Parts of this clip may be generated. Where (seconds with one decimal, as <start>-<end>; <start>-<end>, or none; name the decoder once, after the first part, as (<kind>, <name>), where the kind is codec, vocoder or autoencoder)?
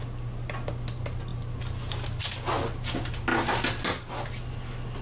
none